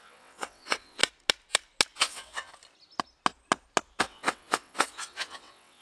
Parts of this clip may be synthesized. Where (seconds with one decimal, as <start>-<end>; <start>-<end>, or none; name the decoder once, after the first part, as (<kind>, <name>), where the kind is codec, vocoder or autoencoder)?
0.0-1.0 (vocoder, WaveNeXt); 2.0-2.5; 4.0-5.8